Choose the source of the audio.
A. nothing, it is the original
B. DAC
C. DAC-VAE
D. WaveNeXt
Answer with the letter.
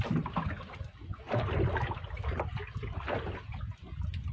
A